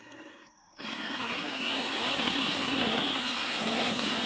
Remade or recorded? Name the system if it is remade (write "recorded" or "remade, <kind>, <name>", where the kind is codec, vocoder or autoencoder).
remade, codec, SNAC